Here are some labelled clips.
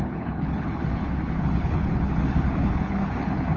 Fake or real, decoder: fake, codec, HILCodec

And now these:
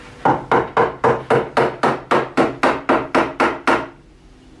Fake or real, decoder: real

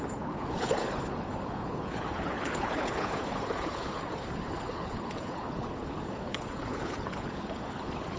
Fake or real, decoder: fake, codec, HILCodec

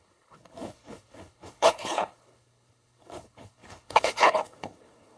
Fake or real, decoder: fake, codec, HILCodec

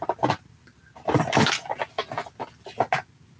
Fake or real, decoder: real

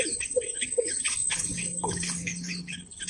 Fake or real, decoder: fake, codec, HILCodec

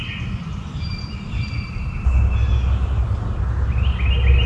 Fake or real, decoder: real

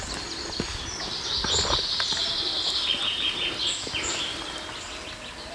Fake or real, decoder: real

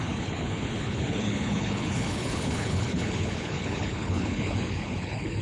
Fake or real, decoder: fake, codec, HILCodec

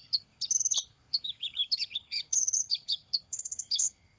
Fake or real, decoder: fake, codec, HILCodec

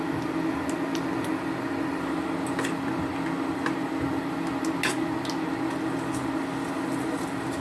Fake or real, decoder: real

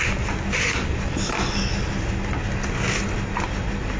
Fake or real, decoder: real